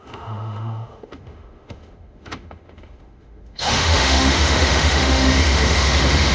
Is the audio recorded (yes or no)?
no